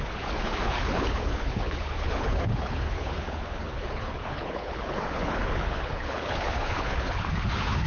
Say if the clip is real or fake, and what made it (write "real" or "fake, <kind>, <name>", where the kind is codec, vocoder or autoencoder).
fake, codec, HILCodec